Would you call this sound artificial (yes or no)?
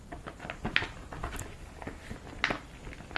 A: no